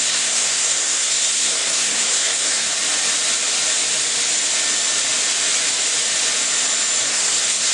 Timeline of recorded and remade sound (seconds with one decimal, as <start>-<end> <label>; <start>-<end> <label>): 0.0-2.7 remade; 2.7-7.0 recorded; 7.0-7.7 remade

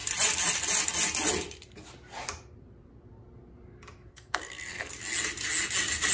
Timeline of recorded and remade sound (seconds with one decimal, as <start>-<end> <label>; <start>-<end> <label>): 0.0-4.1 recorded; 4.1-4.9 remade; 4.9-6.1 recorded

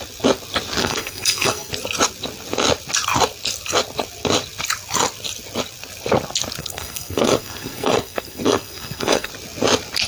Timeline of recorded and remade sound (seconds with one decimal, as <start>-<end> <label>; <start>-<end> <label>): 0.0-0.8 recorded; 0.8-1.7 remade; 1.7-6.6 recorded; 6.6-9.3 remade; 9.3-10.1 recorded